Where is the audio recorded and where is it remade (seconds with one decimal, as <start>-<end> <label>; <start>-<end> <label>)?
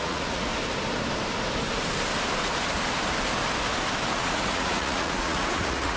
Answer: 0.0-0.5 remade; 0.5-4.1 recorded; 4.1-6.0 remade